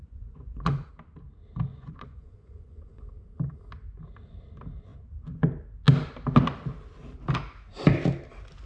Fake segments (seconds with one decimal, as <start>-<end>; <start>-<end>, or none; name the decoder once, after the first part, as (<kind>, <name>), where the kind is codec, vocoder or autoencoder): 0.0-0.9 (vocoder, Vocos); 1.7-3.1